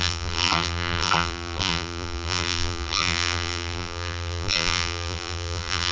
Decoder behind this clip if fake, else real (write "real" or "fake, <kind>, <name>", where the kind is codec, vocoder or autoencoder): fake, vocoder, BigVGAN v2